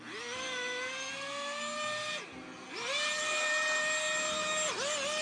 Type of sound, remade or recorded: recorded